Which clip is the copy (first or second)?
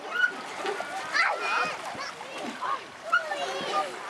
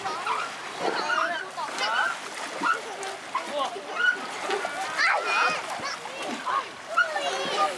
first